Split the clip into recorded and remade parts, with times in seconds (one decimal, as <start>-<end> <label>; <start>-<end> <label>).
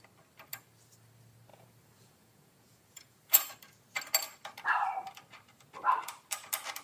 0.0-1.5 recorded; 1.5-3.5 remade; 3.5-6.8 recorded